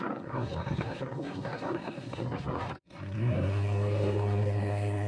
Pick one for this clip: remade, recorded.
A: remade